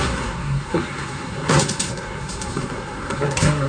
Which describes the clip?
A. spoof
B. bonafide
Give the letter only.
A